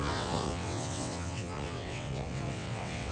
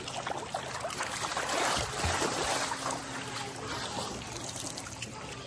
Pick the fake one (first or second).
first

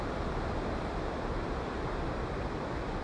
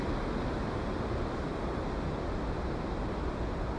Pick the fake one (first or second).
first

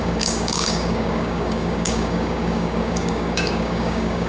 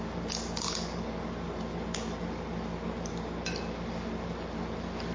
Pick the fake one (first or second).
first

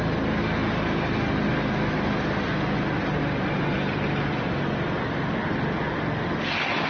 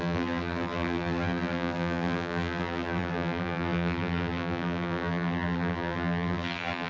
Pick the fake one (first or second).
second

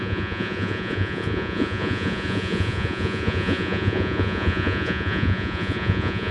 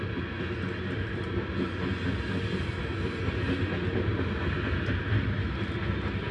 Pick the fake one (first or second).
first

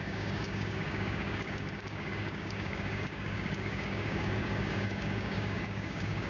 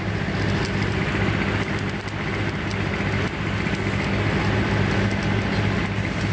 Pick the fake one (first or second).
first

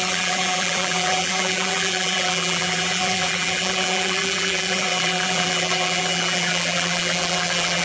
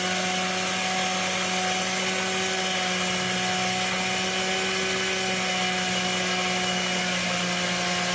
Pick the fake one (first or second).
first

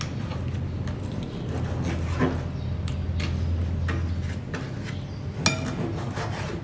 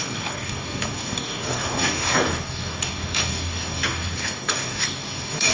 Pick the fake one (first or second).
second